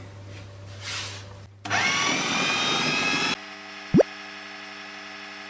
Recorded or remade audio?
recorded